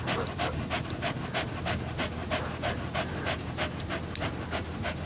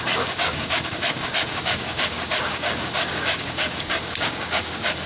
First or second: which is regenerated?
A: second